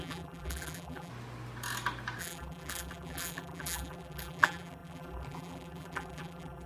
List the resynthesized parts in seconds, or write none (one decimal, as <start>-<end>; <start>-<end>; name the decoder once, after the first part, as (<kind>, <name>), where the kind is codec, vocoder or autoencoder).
0.0-1.1 (vocoder, BigVGAN v2); 2.2-6.7